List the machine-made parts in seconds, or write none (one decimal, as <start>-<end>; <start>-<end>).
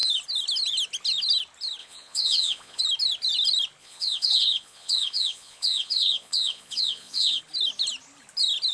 1.8-2.8; 3.8-7.4